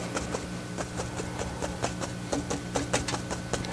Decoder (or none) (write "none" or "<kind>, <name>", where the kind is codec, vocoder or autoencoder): none